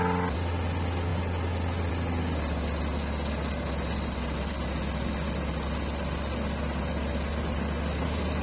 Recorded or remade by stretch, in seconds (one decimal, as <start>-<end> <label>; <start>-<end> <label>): 0.0-8.4 recorded